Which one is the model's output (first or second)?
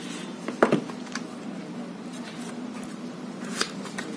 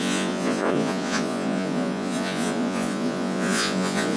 second